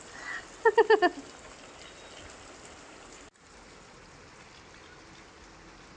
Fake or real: real